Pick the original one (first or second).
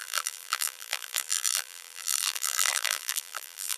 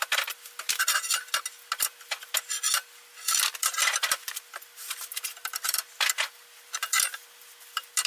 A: second